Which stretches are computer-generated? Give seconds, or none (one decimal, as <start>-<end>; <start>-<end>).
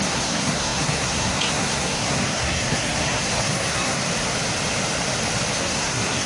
0.0-4.0; 5.6-6.3